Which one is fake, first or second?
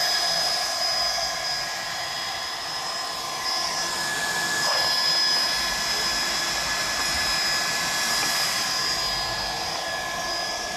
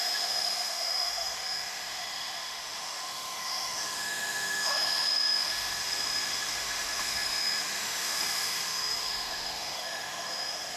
second